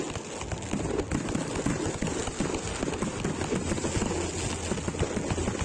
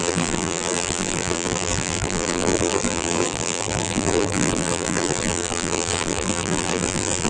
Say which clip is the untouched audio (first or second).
first